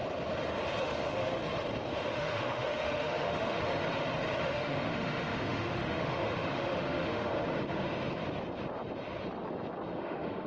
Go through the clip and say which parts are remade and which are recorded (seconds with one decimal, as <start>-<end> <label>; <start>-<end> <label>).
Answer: 0.0-0.8 recorded; 0.8-1.4 remade; 1.4-1.9 recorded; 1.9-3.7 remade; 3.7-4.4 recorded; 4.4-7.3 remade; 7.3-10.0 recorded; 10.0-10.5 remade